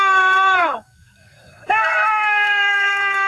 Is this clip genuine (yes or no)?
no